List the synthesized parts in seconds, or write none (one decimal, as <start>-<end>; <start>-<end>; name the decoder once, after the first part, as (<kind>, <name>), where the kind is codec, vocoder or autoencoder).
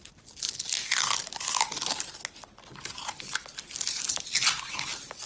none